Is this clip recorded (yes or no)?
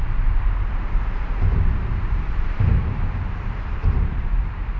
no